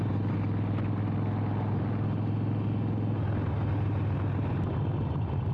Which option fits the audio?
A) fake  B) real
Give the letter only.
B